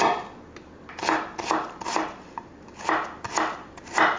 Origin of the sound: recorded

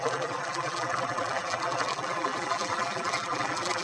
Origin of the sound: remade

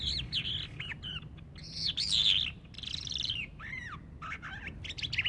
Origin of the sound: recorded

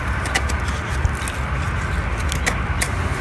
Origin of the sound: recorded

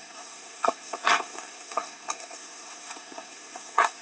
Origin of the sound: remade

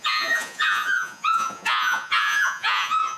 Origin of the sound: remade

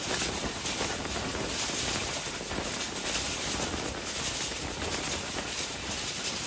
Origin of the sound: recorded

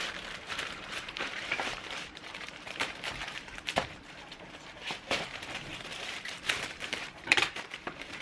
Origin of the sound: remade